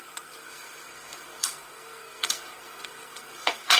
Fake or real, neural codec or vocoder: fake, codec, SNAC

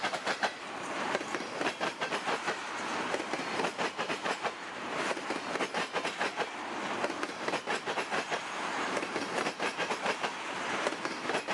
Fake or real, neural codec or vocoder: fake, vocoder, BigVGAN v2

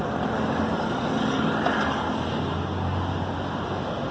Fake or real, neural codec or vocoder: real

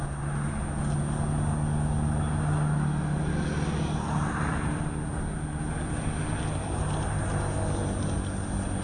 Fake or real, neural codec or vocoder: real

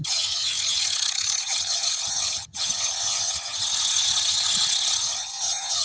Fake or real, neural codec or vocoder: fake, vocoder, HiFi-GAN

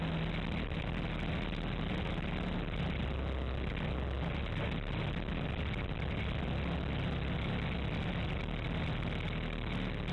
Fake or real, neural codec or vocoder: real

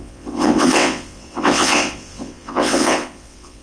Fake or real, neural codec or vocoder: fake, vocoder, WaveNeXt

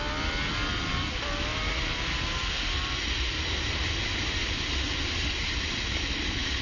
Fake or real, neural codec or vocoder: real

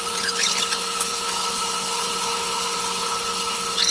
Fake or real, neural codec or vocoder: fake, codec, HILCodec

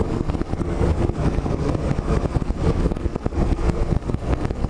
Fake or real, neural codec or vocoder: fake, codec, SNAC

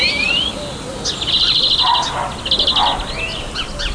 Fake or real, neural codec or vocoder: real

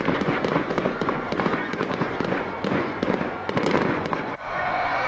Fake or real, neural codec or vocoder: fake, vocoder, Vocos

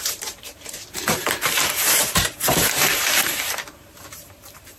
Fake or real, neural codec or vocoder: fake, vocoder, BigVGAN v2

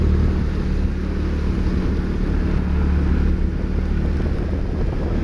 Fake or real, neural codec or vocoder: real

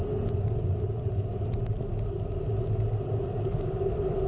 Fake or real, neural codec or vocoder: real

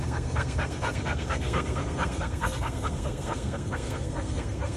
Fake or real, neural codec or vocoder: fake, codec, SNAC